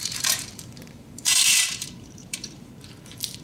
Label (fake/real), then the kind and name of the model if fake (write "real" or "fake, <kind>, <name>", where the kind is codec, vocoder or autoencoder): fake, vocoder, BigVGAN v2